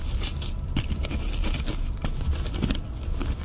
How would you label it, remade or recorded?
recorded